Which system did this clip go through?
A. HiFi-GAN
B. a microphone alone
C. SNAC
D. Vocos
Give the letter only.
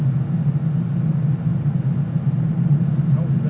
B